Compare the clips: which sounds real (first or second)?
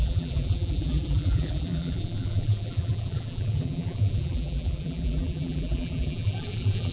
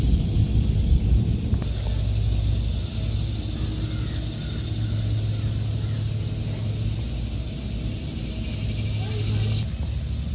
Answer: second